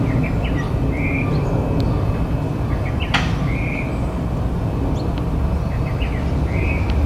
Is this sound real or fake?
real